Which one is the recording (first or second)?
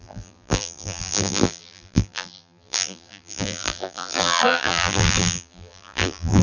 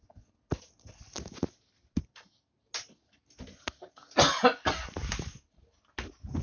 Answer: second